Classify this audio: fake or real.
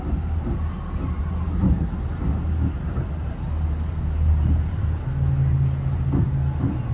real